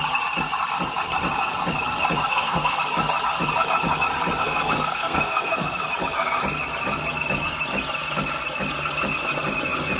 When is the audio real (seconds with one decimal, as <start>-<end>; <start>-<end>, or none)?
0.0-2.3; 2.8-4.4; 5.8-10.0